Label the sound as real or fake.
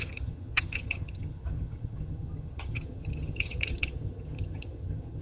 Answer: fake